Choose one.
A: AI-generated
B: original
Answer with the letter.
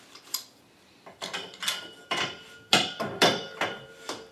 A